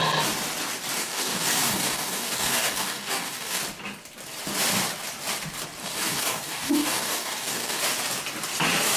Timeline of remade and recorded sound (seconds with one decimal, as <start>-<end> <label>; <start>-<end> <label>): 0.0-1.0 recorded; 1.0-3.6 remade; 3.6-5.8 recorded; 5.8-7.8 remade; 7.8-9.0 recorded